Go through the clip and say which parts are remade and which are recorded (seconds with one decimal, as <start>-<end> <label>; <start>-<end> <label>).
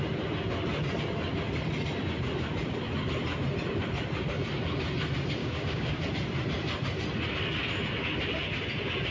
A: 0.0-5.4 recorded; 5.4-6.0 remade; 6.0-9.1 recorded